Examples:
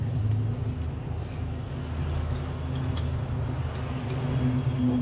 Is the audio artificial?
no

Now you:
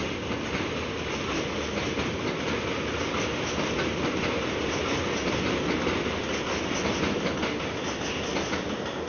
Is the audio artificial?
no